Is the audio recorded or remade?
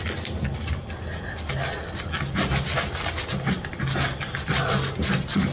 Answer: recorded